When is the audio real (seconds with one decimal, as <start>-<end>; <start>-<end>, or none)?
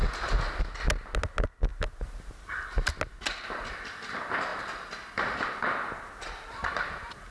0.0-7.3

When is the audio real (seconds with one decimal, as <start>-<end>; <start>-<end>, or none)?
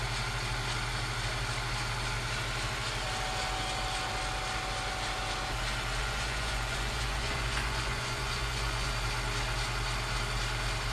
0.0-6.0; 8.9-10.9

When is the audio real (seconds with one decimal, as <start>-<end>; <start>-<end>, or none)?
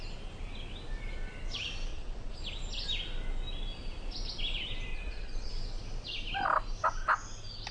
0.0-1.9; 2.4-4.9; 5.5-7.7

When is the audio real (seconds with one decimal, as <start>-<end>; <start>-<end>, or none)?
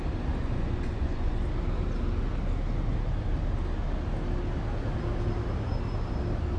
0.0-0.4; 1.4-6.6